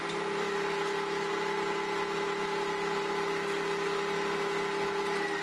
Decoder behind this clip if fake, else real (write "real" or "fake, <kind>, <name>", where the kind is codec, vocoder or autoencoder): real